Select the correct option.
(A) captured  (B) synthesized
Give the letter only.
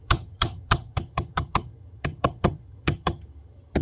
B